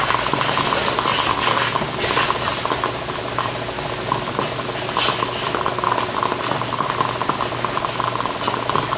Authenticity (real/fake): real